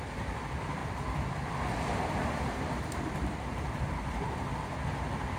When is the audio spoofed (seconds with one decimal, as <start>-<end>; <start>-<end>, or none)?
0.0-0.8; 1.8-5.4